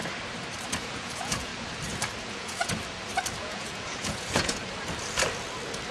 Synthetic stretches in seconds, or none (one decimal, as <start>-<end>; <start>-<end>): 0.8-1.5; 2.2-2.6; 3.4-4.6